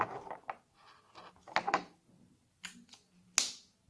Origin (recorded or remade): recorded